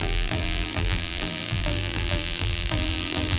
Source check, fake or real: fake